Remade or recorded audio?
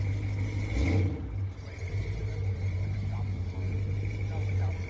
recorded